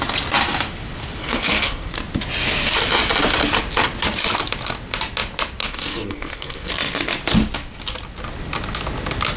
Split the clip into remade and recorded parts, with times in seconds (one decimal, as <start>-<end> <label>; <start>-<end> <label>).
0.0-1.2 recorded; 1.2-1.9 remade; 1.9-5.6 recorded; 5.6-6.7 remade; 6.7-9.4 recorded